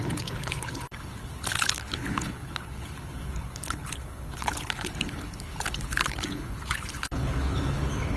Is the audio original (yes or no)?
no